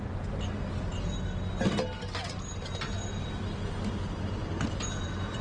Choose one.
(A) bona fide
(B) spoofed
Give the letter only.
A